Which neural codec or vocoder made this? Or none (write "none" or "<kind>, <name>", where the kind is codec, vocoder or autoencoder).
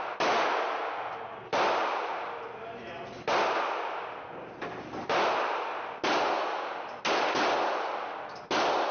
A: none